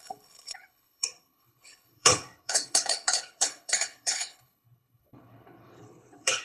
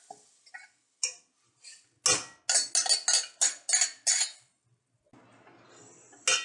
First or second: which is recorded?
second